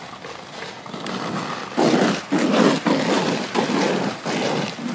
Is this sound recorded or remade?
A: recorded